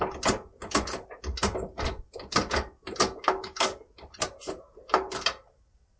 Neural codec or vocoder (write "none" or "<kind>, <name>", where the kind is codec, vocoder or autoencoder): none